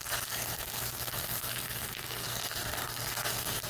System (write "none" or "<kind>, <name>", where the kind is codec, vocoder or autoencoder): codec, SNAC